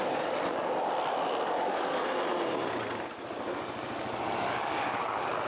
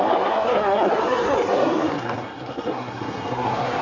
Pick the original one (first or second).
first